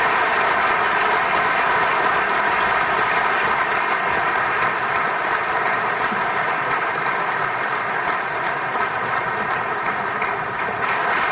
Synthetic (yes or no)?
no